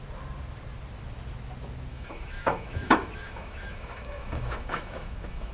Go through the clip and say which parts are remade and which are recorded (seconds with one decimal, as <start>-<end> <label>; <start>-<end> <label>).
0.0-1.9 recorded; 1.9-5.5 remade